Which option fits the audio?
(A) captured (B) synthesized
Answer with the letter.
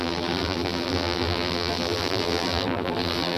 B